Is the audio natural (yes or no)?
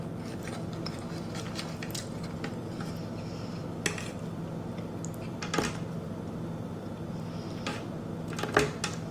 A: yes